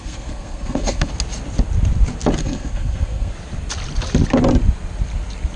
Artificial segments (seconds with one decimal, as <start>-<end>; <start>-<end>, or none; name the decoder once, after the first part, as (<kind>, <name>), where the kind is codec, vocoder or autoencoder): 0.0-1.1 (codec, SNAC); 2.4-3.3